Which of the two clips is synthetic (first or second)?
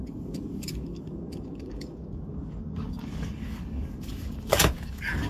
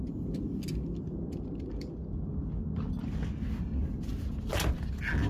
first